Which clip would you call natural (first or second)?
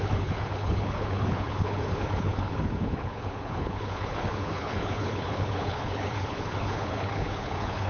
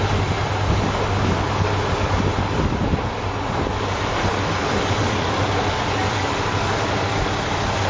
second